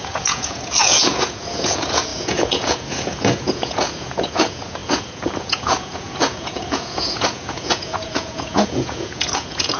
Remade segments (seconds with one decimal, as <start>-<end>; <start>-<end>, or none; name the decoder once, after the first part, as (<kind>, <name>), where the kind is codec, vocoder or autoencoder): 0.0-9.8 (vocoder, Vocos)